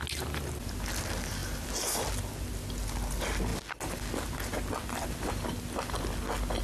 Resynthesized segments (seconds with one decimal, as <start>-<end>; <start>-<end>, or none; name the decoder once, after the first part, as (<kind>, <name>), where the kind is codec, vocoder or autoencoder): none